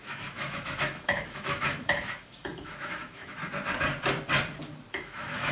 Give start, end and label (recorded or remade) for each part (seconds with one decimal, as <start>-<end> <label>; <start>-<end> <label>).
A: 0.0-3.4 remade; 3.4-4.9 recorded; 4.9-5.5 remade